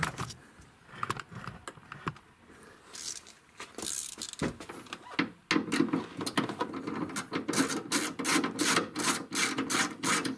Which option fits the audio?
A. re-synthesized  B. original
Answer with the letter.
B